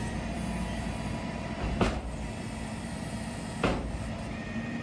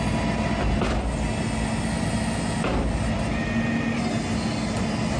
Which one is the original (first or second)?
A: second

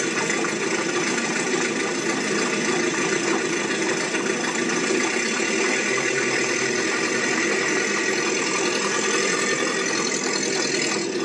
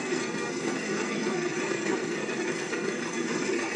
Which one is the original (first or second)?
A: first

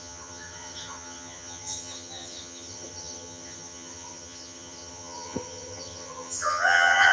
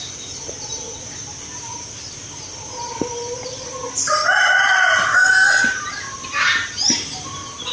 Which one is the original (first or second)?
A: second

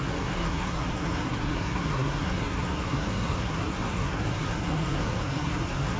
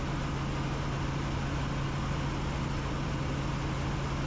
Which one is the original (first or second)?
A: second